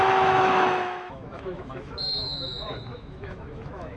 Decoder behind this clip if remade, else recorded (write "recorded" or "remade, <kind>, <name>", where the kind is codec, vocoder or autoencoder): remade, autoencoder, DAC-VAE